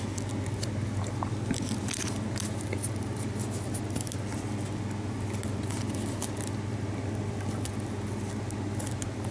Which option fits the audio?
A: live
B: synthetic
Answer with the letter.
A